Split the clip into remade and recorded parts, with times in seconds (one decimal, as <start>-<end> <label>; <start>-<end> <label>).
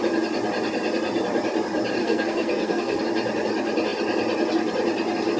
0.0-2.0 recorded; 2.0-3.0 remade; 3.0-5.4 recorded